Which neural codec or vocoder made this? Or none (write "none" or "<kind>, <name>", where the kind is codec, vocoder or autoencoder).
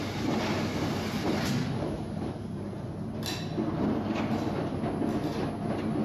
none